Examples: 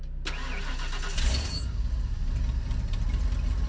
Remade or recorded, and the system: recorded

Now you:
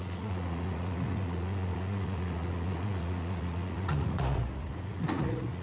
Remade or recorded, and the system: remade, vocoder, Vocos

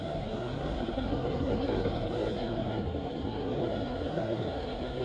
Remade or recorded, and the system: remade, codec, SNAC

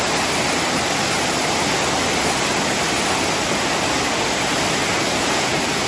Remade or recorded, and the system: recorded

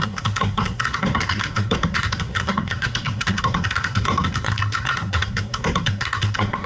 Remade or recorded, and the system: remade, codec, SNAC